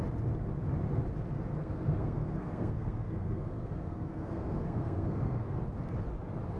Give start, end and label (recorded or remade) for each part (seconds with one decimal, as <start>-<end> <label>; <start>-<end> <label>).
0.0-1.6 recorded; 1.6-5.6 remade; 5.6-6.6 recorded